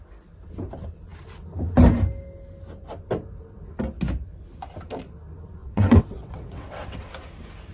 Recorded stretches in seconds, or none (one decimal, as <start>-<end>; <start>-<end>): 0.0-5.6; 7.1-7.7